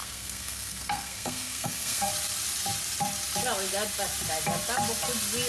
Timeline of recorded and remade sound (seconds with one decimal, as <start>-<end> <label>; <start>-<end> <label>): 0.0-2.1 remade; 2.1-5.5 recorded